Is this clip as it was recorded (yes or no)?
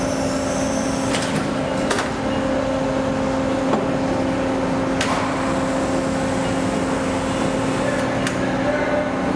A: yes